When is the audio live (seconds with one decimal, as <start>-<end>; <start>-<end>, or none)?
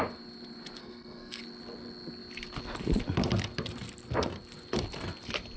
0.0-0.8; 1.4-5.6